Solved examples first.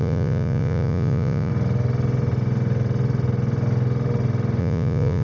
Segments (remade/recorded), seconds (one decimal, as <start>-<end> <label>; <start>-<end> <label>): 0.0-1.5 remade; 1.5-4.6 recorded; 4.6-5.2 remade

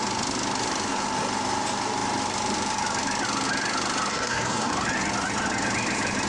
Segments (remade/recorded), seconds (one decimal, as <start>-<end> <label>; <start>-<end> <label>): 0.0-4.1 recorded; 4.1-4.7 remade; 4.7-6.3 recorded

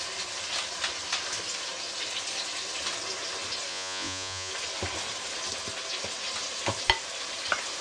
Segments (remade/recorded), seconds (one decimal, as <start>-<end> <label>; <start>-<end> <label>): 0.0-3.7 recorded; 3.7-4.5 remade; 4.5-7.8 recorded